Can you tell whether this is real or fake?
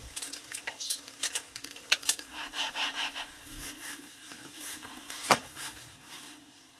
fake